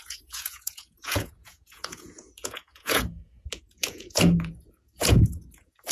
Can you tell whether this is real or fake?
fake